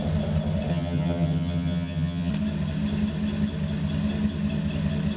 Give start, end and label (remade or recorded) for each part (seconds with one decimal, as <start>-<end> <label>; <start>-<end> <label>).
0.0-0.7 recorded; 0.7-2.3 remade; 2.3-5.2 recorded